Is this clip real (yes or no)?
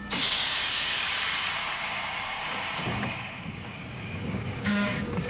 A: no